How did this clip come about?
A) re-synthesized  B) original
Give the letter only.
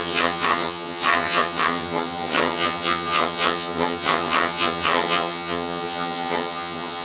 A